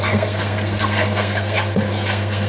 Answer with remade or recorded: remade